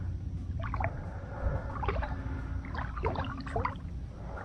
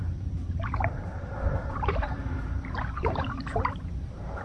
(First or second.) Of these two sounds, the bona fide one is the first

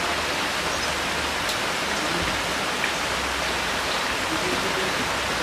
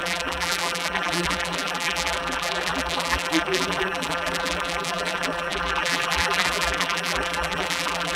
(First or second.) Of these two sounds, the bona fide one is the first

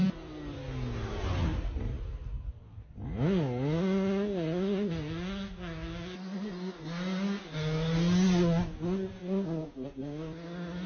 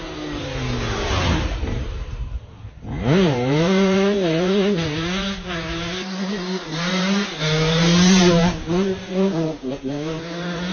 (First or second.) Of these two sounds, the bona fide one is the first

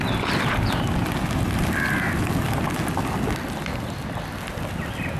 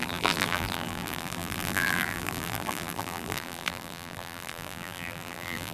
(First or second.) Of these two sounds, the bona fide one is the first